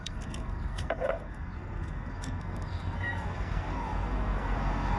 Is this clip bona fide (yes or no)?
no